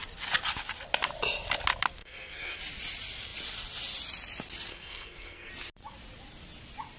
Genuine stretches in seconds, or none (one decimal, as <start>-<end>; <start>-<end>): 0.0-2.0; 2.6-4.7; 5.5-7.0